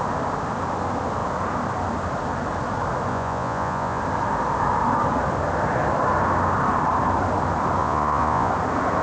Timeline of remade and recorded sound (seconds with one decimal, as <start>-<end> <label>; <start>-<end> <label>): 0.0-3.1 recorded; 3.1-4.0 remade; 4.0-7.8 recorded; 7.8-8.5 remade; 8.5-9.0 recorded